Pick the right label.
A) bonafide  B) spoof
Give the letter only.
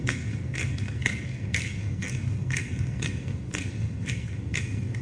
B